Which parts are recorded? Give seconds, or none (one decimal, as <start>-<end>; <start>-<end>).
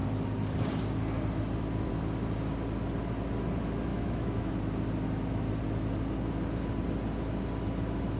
0.0-3.9; 4.5-8.2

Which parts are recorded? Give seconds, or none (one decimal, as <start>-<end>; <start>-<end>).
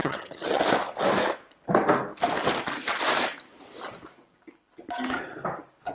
0.6-5.9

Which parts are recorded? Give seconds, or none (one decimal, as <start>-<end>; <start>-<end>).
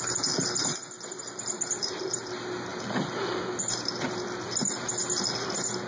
0.0-5.9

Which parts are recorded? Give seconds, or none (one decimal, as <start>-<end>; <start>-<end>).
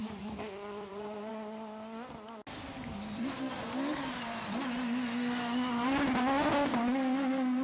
1.3-7.6